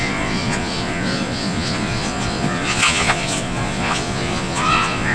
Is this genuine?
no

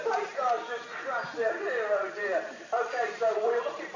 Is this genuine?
yes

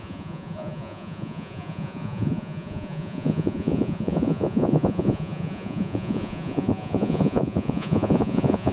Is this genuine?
no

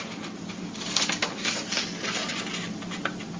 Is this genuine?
yes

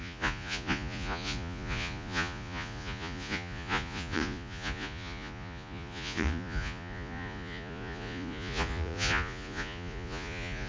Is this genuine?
no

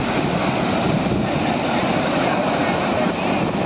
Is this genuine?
yes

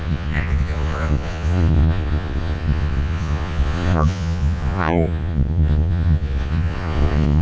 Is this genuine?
no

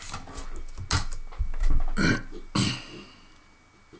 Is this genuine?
yes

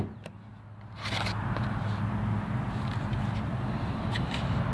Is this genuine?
yes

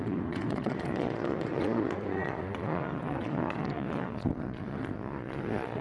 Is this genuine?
no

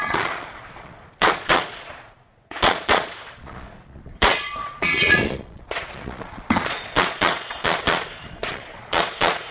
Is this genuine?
no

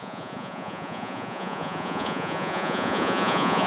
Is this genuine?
no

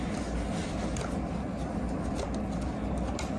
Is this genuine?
yes